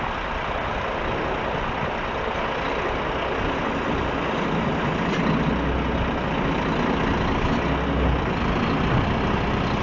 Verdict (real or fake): real